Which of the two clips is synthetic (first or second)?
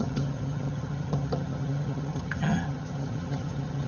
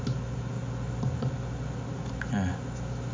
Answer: first